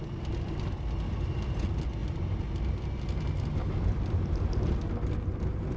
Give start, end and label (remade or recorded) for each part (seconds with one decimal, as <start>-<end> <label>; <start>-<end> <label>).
0.0-5.8 recorded